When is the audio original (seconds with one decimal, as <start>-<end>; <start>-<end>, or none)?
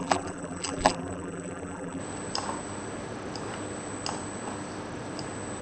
2.0-5.6